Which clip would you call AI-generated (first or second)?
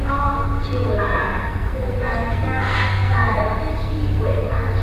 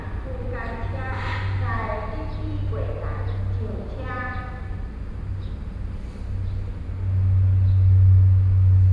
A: first